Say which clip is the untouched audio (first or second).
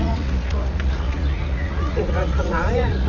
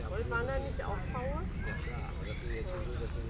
second